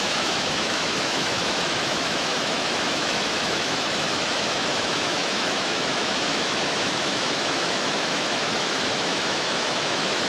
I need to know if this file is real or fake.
fake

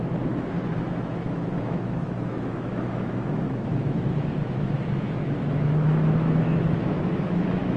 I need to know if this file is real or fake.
fake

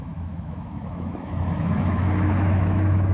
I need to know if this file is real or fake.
fake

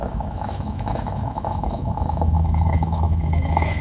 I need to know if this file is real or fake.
fake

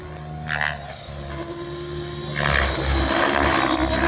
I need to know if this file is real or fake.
real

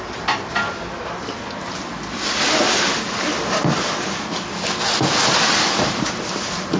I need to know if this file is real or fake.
real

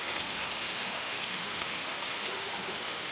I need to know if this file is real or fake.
fake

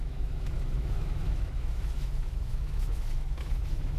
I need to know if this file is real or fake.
fake